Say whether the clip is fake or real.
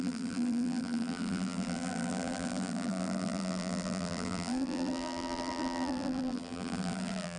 fake